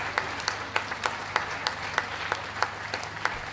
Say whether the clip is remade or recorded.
recorded